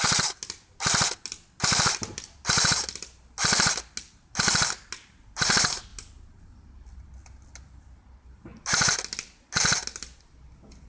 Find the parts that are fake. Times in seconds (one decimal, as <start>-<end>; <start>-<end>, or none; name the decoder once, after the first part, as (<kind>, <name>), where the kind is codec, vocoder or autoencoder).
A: none